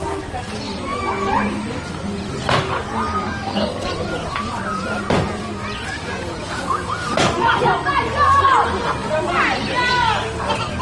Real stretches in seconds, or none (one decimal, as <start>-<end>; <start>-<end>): 0.0-3.1; 3.9-10.8